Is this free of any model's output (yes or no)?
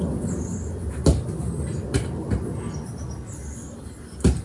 yes